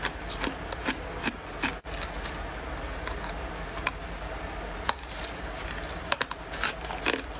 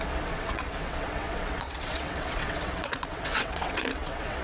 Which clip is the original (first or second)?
first